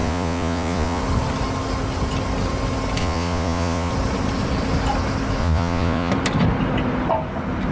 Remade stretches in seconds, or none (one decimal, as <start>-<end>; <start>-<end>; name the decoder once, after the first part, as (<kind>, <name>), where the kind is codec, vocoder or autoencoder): 0.0-1.0 (vocoder, Vocos); 3.0-3.9; 5.4-6.1